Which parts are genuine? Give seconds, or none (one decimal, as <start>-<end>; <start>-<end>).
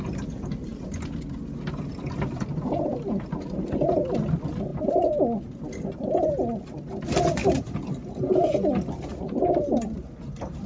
0.0-10.7